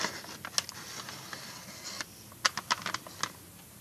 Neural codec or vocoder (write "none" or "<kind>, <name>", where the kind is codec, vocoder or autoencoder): none